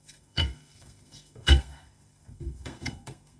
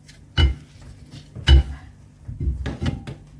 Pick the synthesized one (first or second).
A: first